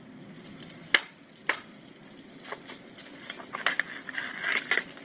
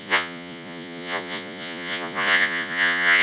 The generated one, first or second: second